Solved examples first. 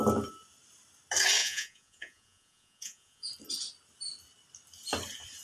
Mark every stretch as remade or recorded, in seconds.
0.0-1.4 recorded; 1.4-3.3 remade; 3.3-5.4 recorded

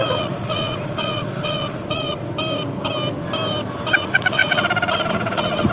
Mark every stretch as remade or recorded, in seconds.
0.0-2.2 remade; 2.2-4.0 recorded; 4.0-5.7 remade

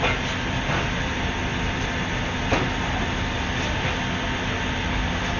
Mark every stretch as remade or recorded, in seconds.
0.0-5.4 recorded

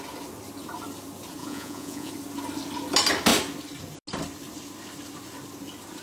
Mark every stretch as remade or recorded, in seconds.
0.0-1.4 recorded; 1.4-2.1 remade; 2.1-6.0 recorded

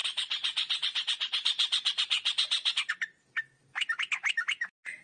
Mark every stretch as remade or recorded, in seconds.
0.0-2.9 remade; 2.9-5.0 recorded

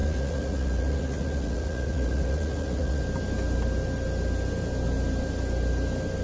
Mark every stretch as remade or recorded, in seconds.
0.0-3.0 remade; 3.0-6.2 recorded

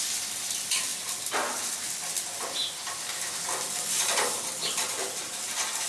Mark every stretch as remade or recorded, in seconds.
0.0-5.9 recorded